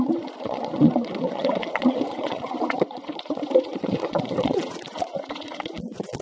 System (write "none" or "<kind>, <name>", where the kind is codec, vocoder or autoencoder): vocoder, Vocos